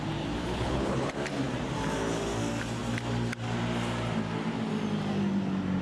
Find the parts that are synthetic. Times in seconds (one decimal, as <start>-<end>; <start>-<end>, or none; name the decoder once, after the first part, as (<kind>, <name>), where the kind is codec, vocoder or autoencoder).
0.4-1.1 (codec, HILCodec)